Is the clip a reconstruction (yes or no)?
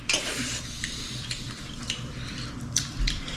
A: yes